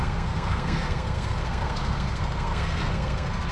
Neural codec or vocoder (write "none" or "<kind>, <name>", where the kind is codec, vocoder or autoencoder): codec, SNAC